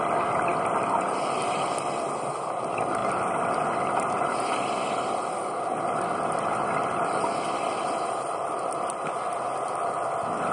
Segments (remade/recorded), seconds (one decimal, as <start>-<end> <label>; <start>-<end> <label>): 0.0-10.5 recorded

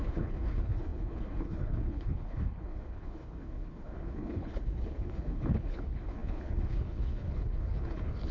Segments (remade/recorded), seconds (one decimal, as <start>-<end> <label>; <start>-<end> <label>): 0.0-8.3 remade

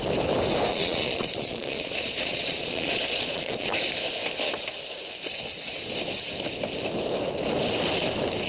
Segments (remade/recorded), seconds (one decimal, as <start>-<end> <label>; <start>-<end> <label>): 0.0-0.7 recorded; 0.7-3.7 remade; 3.7-8.5 recorded

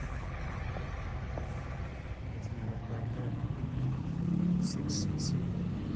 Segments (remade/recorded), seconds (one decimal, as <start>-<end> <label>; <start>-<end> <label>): 0.0-0.7 remade; 0.7-2.7 recorded; 2.7-5.2 remade; 5.2-6.0 recorded

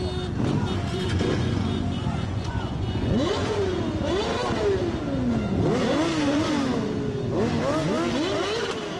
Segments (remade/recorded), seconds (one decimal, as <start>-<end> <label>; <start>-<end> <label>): 0.0-0.9 recorded; 0.9-4.0 remade; 4.0-9.0 recorded

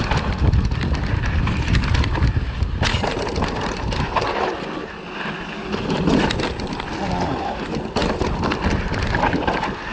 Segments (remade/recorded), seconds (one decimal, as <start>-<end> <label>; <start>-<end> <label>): 0.0-9.9 recorded

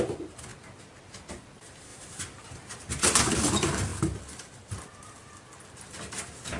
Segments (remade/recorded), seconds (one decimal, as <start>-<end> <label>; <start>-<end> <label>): 0.0-1.9 recorded; 1.9-2.9 remade; 2.9-6.6 recorded